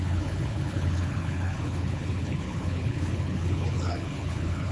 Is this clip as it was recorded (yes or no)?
no